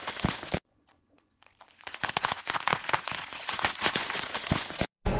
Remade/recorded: remade